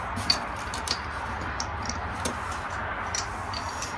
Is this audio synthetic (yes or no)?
no